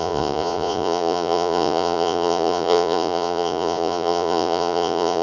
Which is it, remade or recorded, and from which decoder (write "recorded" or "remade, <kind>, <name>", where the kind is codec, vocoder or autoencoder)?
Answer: remade, vocoder, Vocos